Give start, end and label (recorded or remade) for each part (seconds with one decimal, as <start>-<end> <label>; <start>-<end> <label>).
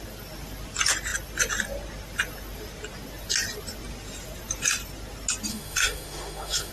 0.0-5.5 recorded; 5.5-6.7 remade